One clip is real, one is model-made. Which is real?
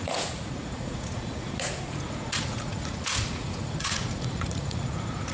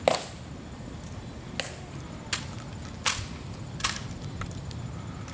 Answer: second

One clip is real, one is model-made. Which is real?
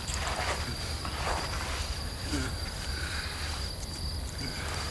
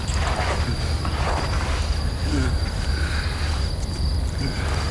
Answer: second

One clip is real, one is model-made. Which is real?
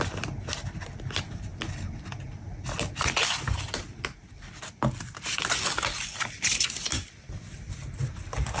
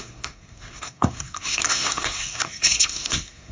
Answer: first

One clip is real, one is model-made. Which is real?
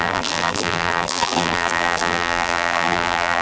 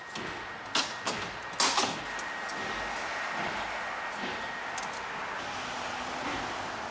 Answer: second